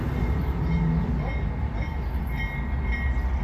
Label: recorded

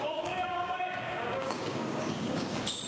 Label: remade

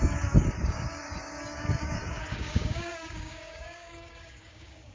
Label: remade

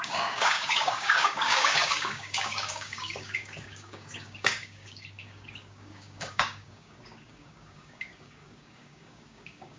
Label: remade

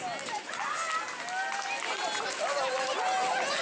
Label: recorded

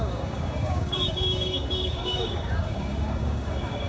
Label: remade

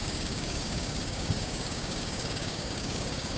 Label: remade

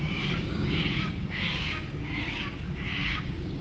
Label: remade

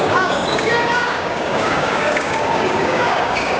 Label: remade